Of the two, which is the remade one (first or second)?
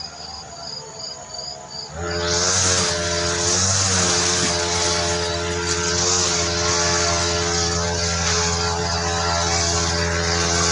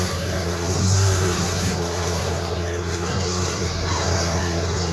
second